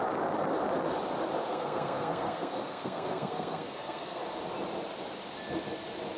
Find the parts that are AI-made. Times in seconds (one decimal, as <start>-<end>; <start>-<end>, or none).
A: 1.5-4.2